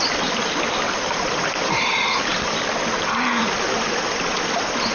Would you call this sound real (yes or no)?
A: yes